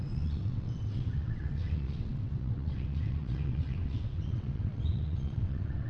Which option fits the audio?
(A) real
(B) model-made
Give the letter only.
B